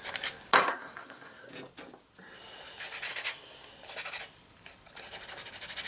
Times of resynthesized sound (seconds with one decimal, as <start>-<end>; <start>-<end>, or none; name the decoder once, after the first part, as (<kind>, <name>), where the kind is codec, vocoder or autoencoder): 0.6-1.5 (codec, SNAC); 3.1-3.7